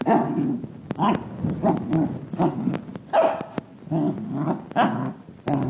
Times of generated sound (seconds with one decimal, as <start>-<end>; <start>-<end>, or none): none